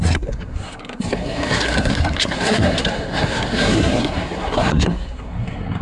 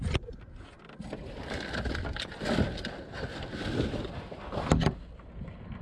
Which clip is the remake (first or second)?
first